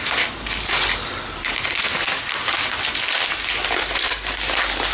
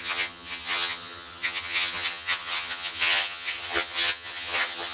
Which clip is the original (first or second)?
first